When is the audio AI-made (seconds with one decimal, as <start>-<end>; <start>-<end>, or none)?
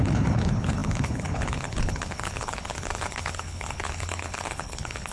0.0-5.1